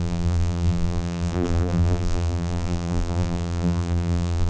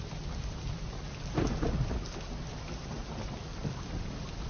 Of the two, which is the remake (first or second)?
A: first